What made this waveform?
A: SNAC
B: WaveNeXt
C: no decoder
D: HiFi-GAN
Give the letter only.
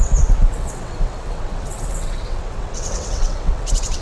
B